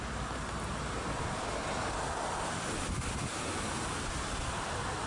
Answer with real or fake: real